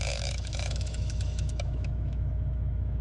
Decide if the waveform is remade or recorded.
remade